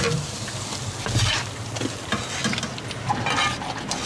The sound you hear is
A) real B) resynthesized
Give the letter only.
A